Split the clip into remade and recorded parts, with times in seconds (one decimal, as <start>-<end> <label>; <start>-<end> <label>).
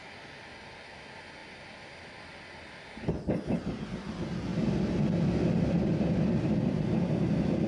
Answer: 0.0-7.7 recorded